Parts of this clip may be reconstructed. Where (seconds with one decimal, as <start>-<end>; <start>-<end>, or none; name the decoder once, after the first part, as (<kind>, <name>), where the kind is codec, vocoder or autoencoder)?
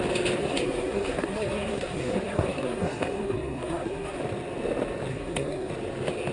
0.4-4.2 (codec, SNAC); 5.1-5.7